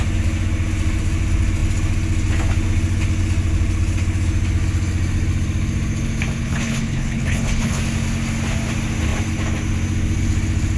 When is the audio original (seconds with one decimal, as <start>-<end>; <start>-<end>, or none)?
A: 0.0-6.4; 7.8-10.8